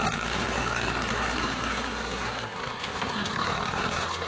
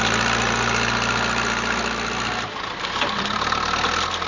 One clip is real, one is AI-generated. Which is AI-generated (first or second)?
first